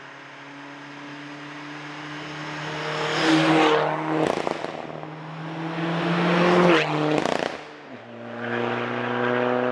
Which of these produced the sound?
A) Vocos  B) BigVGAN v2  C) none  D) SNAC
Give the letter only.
C